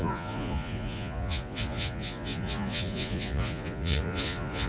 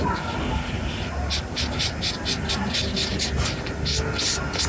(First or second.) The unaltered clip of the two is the second